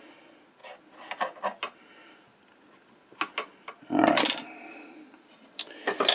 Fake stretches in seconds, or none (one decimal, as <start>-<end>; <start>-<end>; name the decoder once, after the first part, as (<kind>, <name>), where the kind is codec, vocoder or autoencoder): none